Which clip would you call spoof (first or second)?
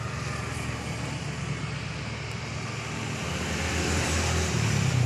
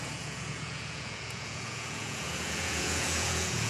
second